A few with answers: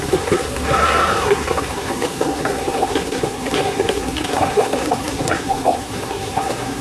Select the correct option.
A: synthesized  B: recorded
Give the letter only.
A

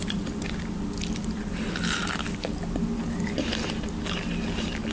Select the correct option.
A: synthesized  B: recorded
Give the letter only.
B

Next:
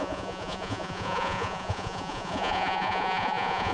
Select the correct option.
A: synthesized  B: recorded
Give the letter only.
A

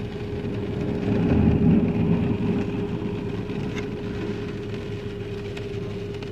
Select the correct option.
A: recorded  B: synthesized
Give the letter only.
A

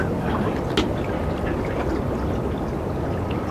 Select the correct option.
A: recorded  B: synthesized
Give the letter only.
A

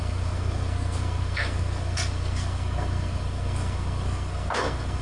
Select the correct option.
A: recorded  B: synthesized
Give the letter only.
B